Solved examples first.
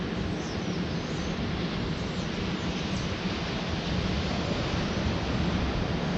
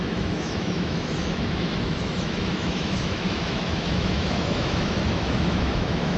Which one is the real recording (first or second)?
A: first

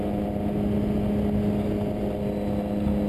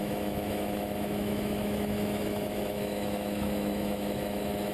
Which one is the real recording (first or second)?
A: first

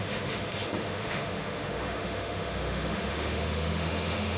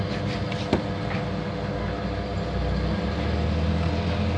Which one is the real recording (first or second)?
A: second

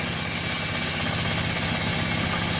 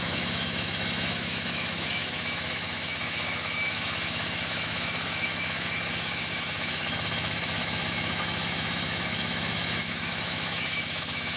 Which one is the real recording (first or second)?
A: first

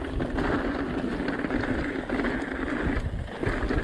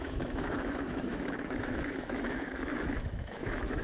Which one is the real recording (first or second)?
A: first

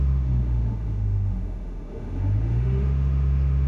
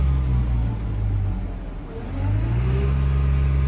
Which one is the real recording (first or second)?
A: second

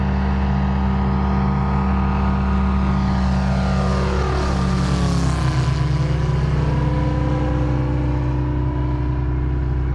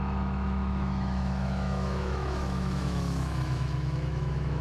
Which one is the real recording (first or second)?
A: first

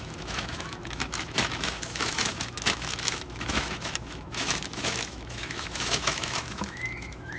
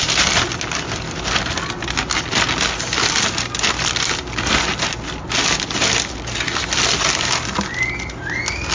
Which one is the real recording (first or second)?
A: second